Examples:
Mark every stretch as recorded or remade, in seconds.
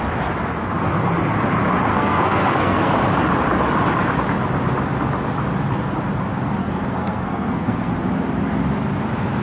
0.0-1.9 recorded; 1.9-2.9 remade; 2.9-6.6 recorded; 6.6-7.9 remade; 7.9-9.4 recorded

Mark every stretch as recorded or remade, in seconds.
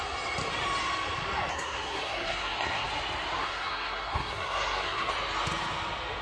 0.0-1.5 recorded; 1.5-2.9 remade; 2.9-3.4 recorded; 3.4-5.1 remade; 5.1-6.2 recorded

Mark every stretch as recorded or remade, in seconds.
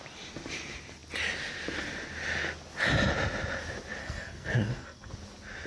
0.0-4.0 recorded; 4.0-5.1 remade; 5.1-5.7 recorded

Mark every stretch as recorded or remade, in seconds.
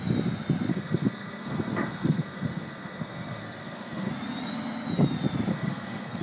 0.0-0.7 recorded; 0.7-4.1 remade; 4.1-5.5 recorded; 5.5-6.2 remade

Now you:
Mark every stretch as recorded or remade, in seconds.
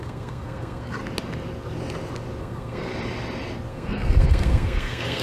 0.0-1.0 remade; 1.0-2.4 recorded; 2.4-2.9 remade; 2.9-3.7 recorded; 3.7-5.2 remade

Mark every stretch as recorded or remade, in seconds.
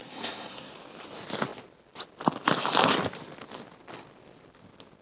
0.0-0.7 remade; 0.7-5.0 recorded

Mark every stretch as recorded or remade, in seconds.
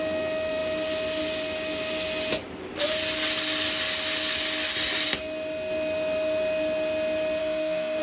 0.0-7.4 recorded; 7.4-8.0 remade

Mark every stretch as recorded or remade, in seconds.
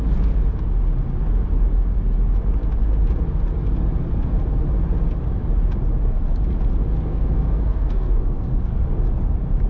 0.0-7.1 recorded; 7.1-8.9 remade; 8.9-9.7 recorded